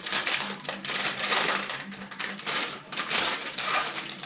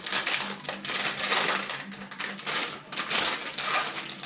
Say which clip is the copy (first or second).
first